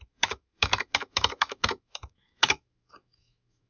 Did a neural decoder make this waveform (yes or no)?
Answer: yes